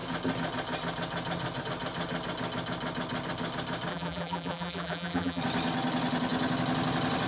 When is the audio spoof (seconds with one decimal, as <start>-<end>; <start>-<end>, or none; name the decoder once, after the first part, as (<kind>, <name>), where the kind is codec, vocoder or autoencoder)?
3.9-5.4 (vocoder, BigVGAN v2)